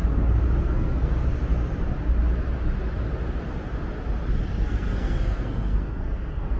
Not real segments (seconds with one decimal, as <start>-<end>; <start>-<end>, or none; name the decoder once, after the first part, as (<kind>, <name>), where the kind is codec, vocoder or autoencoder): 0.6-1.2 (codec, SNAC); 4.5-6.6